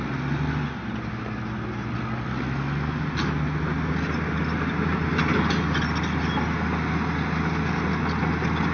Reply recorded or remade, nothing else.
recorded